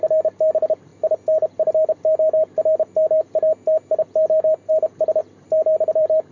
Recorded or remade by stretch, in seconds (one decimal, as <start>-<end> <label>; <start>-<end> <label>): 0.0-5.2 recorded; 5.2-6.3 remade